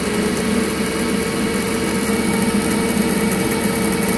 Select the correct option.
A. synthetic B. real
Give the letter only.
B